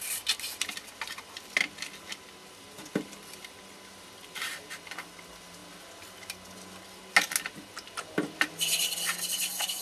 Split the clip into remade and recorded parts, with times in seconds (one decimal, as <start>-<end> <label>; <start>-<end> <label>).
0.0-9.8 recorded